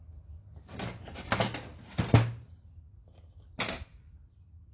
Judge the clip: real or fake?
real